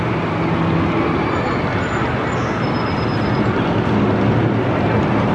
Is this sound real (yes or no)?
yes